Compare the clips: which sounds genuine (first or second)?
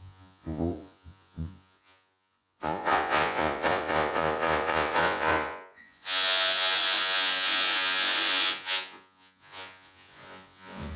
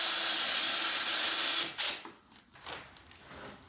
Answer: second